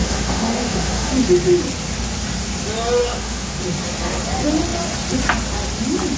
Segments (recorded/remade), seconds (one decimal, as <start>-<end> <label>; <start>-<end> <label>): 0.0-1.1 remade; 1.1-3.0 recorded; 3.0-3.6 remade; 3.6-6.2 recorded